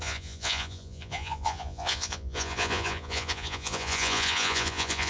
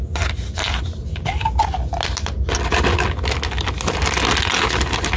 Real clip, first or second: second